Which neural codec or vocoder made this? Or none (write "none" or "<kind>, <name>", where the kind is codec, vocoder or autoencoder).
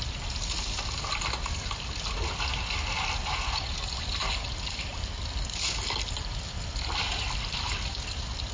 none